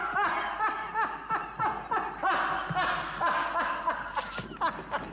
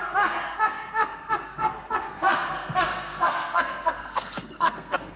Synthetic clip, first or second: second